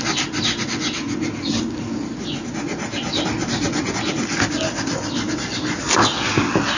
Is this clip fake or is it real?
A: real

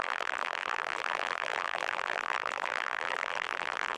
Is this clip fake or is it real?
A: fake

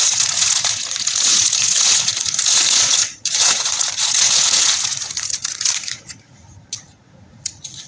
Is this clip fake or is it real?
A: fake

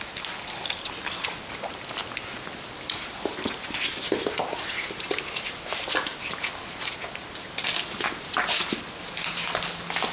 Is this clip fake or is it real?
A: real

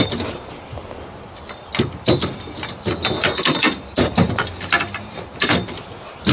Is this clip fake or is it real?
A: real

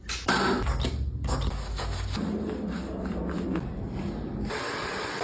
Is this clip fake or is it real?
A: real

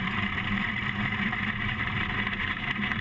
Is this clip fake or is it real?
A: fake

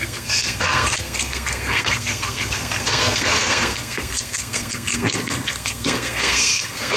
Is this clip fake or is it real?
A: fake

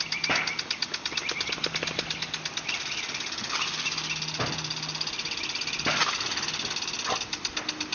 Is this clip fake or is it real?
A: real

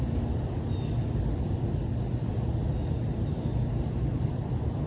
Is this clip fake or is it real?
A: real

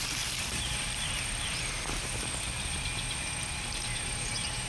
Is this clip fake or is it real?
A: fake